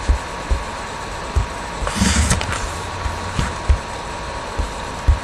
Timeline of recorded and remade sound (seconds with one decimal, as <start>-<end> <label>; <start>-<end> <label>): 0.0-0.7 recorded; 0.7-3.8 remade; 3.8-5.2 recorded